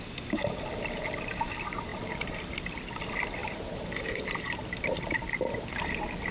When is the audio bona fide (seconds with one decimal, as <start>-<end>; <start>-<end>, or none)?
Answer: 0.0-1.9; 2.6-3.4; 4.8-6.3